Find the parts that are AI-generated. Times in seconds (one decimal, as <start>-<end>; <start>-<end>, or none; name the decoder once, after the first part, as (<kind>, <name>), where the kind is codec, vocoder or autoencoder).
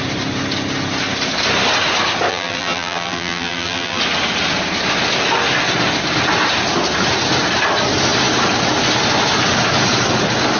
2.3-4.0 (vocoder, BigVGAN v2)